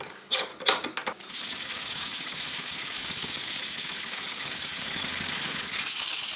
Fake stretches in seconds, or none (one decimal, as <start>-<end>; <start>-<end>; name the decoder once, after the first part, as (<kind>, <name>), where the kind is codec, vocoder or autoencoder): 0.0-0.5 (codec, DAC); 1.3-6.4